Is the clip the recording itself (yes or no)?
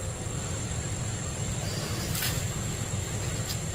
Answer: yes